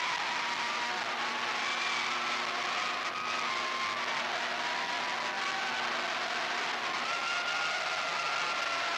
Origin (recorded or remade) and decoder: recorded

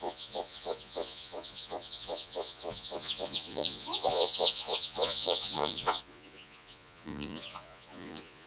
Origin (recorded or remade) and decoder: remade, vocoder, Vocos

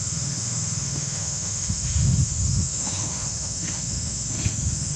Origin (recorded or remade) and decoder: remade, autoencoder, DAC-VAE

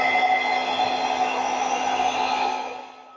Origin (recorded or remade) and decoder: recorded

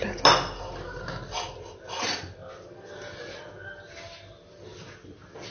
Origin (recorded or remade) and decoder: recorded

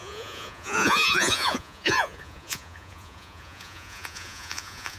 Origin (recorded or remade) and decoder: remade, vocoder, Vocos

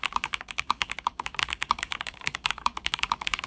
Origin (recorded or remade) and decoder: remade, codec, DAC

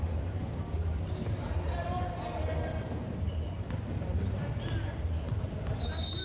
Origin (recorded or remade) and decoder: recorded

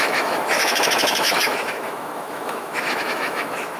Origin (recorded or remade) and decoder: remade, autoencoder, DAC-VAE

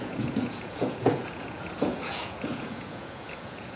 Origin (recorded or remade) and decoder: remade, vocoder, Vocos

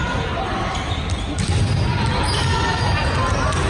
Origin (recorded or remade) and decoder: recorded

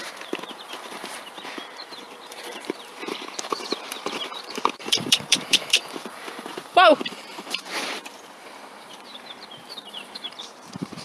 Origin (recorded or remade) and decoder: remade, vocoder, BigVGAN v2